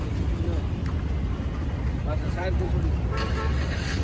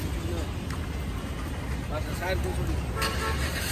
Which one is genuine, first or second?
second